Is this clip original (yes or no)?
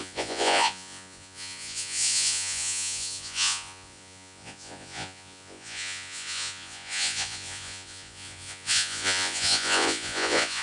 no